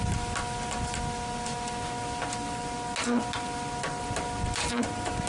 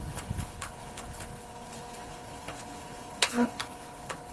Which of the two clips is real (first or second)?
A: first